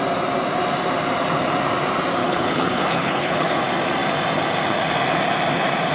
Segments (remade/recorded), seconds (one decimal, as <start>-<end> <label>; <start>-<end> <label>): 0.0-2.2 recorded; 2.2-3.6 remade; 3.6-5.9 recorded